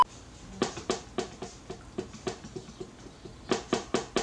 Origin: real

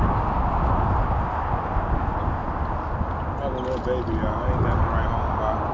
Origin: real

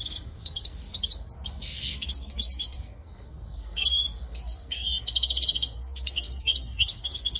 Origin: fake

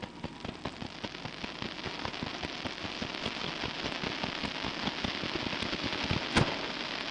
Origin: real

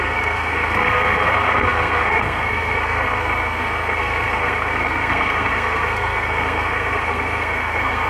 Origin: fake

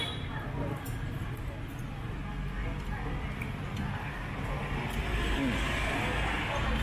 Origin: real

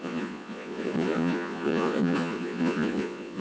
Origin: fake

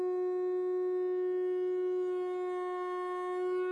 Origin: real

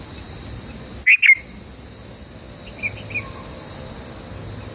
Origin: real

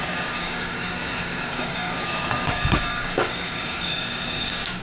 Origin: fake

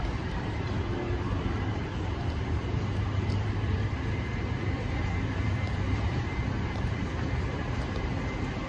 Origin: fake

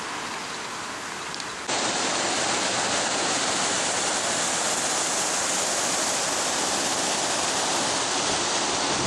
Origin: real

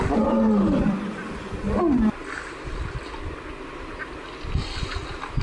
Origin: real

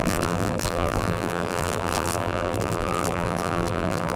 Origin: fake